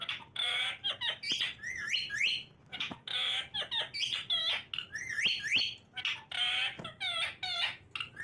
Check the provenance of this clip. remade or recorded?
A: recorded